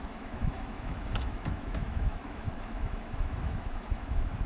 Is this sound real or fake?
fake